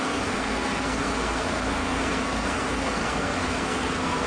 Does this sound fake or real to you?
fake